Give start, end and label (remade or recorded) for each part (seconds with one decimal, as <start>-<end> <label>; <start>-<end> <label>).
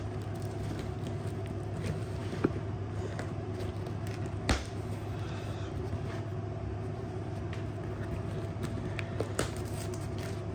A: 0.0-10.5 recorded